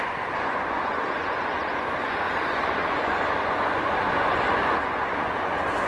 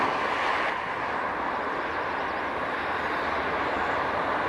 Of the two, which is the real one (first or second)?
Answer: second